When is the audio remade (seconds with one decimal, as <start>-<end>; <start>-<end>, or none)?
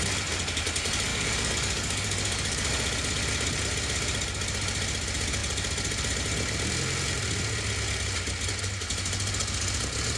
1.1-2.7